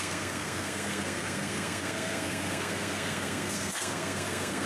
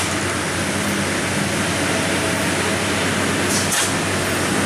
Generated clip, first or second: first